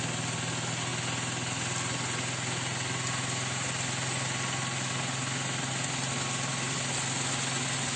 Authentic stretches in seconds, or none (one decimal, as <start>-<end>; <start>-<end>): 0.0-8.0